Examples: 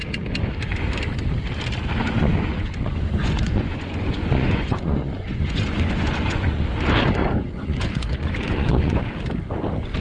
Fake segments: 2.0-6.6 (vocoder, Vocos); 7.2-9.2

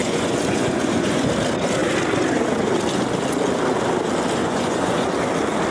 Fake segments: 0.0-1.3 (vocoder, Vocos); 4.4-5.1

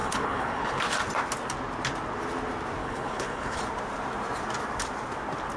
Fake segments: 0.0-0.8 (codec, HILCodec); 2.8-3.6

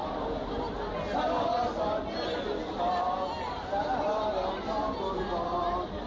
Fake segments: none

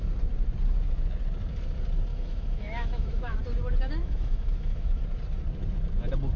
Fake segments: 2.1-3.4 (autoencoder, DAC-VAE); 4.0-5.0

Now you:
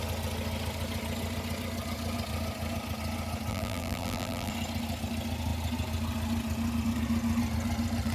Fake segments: 3.5-4.5 (vocoder, BigVGAN v2)

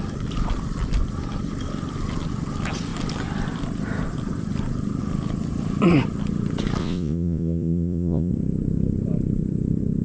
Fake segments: 6.8-8.3 (vocoder, Vocos)

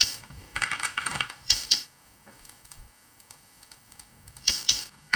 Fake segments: 0.0-5.2 (codec, DAC)